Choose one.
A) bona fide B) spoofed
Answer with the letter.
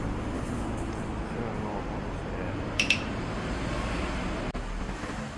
A